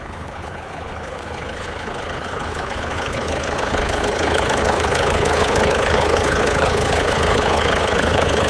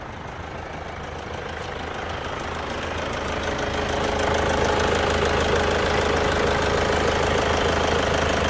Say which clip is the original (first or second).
second